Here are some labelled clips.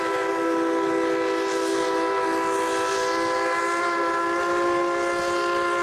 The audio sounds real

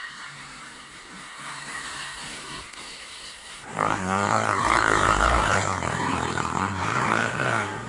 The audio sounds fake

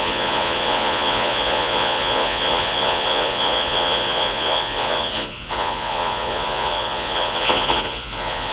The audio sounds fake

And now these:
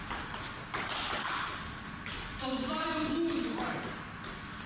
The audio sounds real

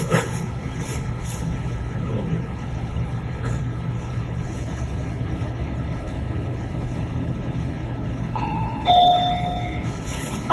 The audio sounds fake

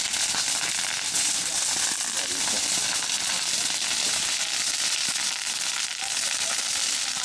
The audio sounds real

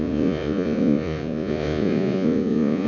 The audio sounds fake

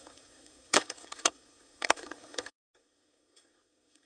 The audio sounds fake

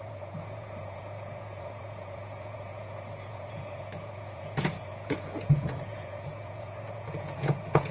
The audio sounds fake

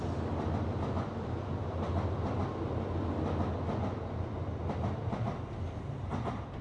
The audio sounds real